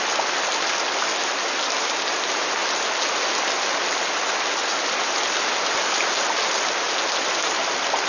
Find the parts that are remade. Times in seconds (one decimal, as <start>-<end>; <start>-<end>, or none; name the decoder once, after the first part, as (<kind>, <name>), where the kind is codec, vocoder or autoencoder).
none